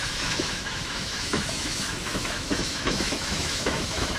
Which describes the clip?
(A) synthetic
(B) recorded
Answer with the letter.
A